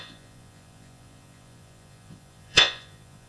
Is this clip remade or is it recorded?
remade